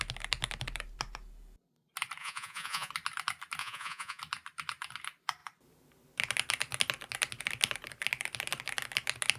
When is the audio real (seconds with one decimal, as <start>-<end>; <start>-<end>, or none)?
0.0-2.2; 2.9-3.6; 4.2-9.4